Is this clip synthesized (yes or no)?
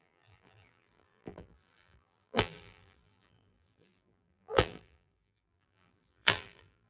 yes